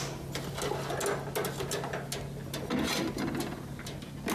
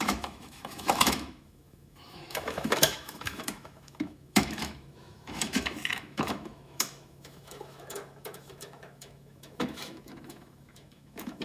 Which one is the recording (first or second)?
first